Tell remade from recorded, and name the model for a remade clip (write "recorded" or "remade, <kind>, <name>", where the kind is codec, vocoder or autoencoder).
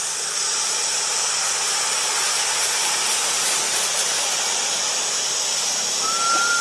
recorded